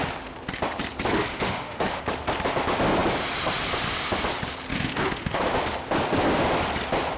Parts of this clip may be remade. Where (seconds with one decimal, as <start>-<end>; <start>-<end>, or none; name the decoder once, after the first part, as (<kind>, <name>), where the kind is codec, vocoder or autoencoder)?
1.3-2.0 (autoencoder, DAC-VAE); 4.7-5.4